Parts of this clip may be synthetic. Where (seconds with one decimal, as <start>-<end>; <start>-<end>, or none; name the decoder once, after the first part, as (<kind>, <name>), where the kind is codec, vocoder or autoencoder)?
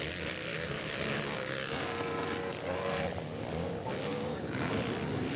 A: 0.5-2.0 (codec, DAC); 3.6-4.7